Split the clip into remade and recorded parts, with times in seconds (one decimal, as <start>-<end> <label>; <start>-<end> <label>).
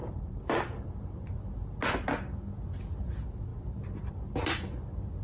0.0-0.6 remade; 0.6-5.2 recorded